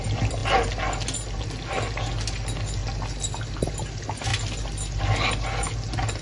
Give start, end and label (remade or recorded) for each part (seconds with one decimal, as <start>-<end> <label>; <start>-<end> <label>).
0.0-6.2 recorded